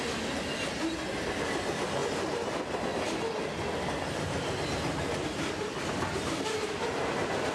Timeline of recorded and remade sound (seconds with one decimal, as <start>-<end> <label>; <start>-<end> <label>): 0.0-7.5 recorded